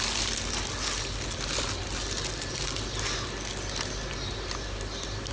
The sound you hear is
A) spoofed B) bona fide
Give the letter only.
B